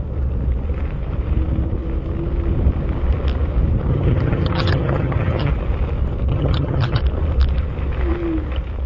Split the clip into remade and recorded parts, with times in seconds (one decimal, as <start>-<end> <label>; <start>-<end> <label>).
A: 0.0-3.9 recorded; 3.9-5.5 remade; 5.5-6.3 recorded; 6.3-7.0 remade; 7.0-8.9 recorded